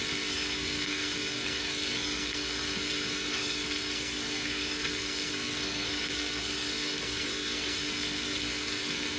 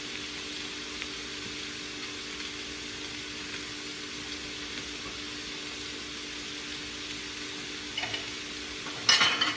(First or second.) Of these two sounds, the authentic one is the second